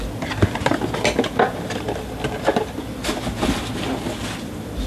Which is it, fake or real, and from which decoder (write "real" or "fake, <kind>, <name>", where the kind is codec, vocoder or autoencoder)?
real